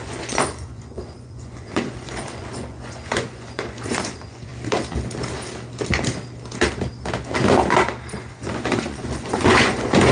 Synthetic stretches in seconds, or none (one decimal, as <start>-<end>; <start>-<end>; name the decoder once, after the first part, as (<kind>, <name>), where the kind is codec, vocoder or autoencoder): 0.0-4.5 (vocoder, Vocos); 8.0-10.1